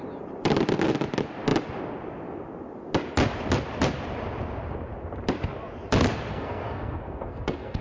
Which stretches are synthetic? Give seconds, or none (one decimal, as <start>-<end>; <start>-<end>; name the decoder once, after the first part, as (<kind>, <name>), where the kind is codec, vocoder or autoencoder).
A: 6.3-7.8 (codec, SNAC)